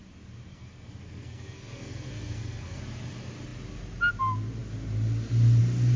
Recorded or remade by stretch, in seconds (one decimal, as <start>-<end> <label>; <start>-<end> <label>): 0.0-0.5 recorded; 0.5-2.8 remade; 2.8-6.0 recorded